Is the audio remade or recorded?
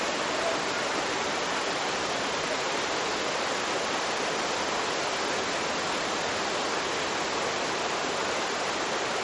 recorded